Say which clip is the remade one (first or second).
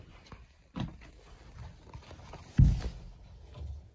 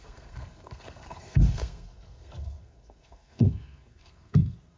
second